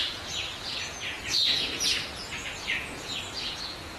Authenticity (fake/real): fake